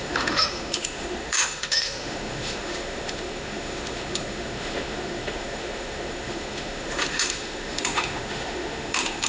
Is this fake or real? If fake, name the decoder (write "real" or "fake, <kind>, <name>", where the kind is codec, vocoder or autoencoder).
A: fake, autoencoder, DAC-VAE